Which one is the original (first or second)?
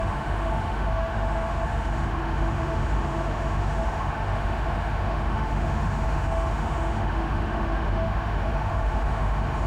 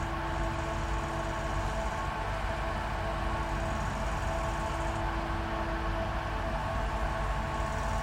second